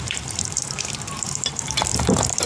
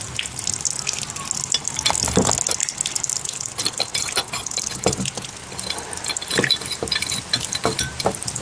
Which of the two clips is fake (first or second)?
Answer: first